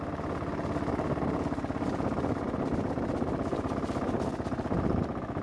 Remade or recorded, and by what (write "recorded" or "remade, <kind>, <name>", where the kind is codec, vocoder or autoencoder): recorded